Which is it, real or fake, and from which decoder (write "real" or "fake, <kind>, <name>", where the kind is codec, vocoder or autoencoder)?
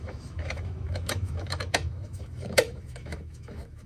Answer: fake, autoencoder, DAC-VAE